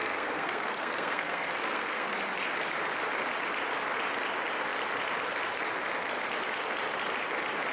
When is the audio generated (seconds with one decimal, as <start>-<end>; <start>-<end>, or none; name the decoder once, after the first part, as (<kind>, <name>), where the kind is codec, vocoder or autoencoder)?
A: 0.0-2.1 (codec, SNAC)